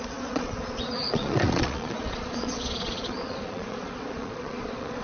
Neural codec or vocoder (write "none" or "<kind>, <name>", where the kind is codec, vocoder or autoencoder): vocoder, Vocos